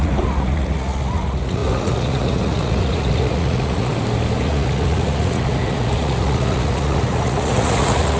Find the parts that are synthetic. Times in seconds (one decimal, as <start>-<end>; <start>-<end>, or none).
0.0-3.9; 4.4-8.2